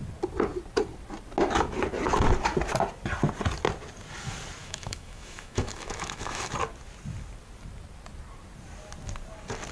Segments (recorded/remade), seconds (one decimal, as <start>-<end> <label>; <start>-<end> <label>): 0.0-4.6 recorded; 4.6-6.5 remade; 6.5-9.7 recorded

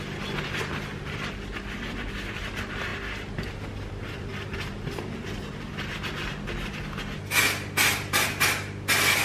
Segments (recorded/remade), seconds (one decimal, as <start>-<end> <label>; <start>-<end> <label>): 0.0-9.2 recorded

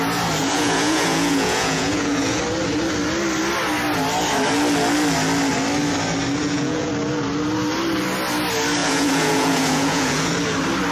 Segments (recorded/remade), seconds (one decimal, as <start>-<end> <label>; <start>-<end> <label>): 0.0-0.4 recorded; 0.4-2.4 remade; 2.4-6.4 recorded; 6.4-6.9 remade; 6.9-8.8 recorded; 8.8-10.3 remade; 10.3-10.9 recorded

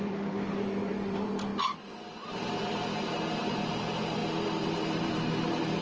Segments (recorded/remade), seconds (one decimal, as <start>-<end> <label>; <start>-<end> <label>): 0.0-1.5 remade; 1.5-3.7 recorded; 3.7-4.2 remade; 4.2-5.0 recorded; 5.0-5.8 remade

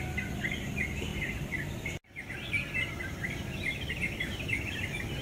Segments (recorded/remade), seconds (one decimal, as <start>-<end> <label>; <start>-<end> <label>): 0.0-1.1 remade; 1.1-2.5 recorded; 2.5-5.2 remade

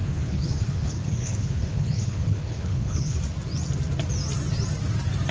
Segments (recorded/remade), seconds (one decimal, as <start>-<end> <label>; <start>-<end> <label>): 0.0-3.2 remade; 3.2-5.3 recorded